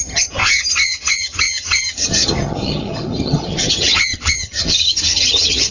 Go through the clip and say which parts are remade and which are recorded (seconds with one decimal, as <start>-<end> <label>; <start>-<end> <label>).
0.0-5.7 remade